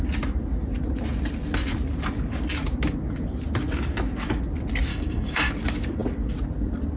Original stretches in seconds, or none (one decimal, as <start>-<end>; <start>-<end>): 0.0-4.9; 5.5-7.0